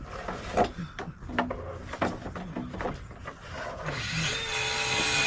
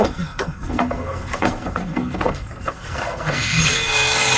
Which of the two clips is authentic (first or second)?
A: first